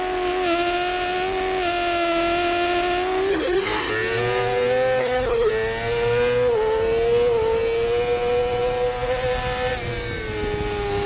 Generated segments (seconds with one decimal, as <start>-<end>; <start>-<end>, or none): 3.3-3.9; 5.0-5.5